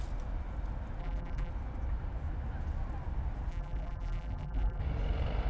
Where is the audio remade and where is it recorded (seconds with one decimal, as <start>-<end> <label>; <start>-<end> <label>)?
0.0-1.0 recorded; 1.0-1.5 remade; 1.5-3.5 recorded; 3.5-4.8 remade; 4.8-5.5 recorded